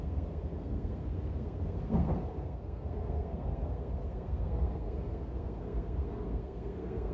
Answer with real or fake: fake